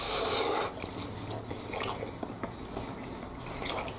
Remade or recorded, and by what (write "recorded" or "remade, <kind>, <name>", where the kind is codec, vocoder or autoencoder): recorded